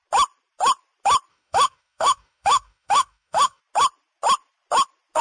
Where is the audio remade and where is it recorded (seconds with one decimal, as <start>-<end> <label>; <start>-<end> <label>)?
0.0-1.3 recorded; 1.3-3.6 remade; 3.6-5.2 recorded